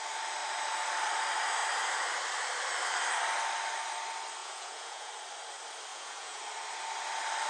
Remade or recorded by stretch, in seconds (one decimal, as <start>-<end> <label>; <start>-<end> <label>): 0.0-4.4 recorded; 4.4-5.1 remade; 5.1-5.9 recorded; 5.9-6.4 remade; 6.4-7.5 recorded